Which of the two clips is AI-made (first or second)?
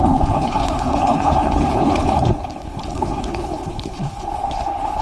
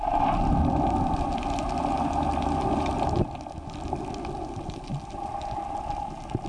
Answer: first